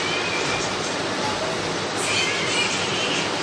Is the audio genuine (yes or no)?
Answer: yes